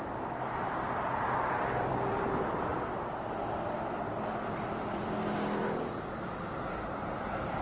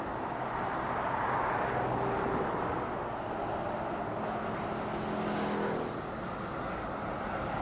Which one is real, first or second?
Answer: second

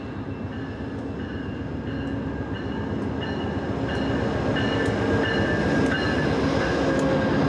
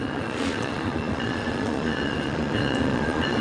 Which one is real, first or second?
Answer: first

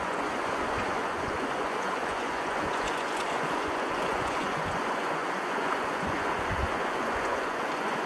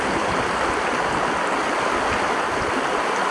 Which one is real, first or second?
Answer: second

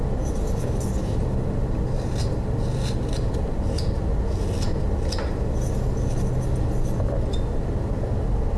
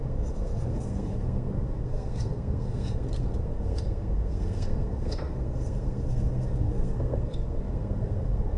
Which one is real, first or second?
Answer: first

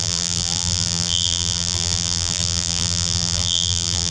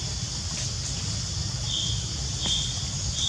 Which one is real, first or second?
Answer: second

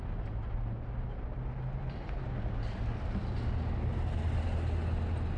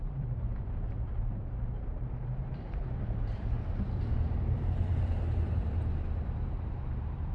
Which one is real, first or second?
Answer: first